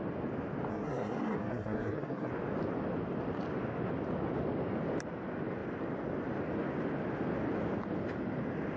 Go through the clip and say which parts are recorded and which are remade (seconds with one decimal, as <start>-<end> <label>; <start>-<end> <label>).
0.0-0.7 recorded; 0.7-2.3 remade; 2.3-8.8 recorded